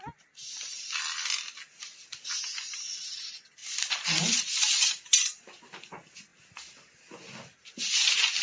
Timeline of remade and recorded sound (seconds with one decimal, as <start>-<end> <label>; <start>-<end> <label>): 0.0-3.6 recorded; 3.6-5.6 remade; 5.6-8.4 recorded